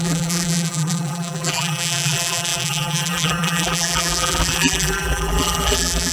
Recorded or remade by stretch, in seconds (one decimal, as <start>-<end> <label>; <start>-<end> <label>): 0.0-6.1 remade